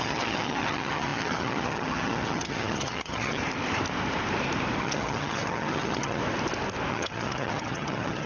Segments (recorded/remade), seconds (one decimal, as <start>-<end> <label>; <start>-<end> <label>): 0.0-3.4 remade; 3.4-4.8 recorded; 4.8-6.2 remade; 6.2-6.9 recorded; 6.9-8.3 remade